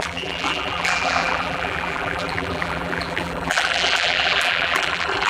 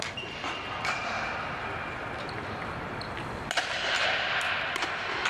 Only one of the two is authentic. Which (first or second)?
second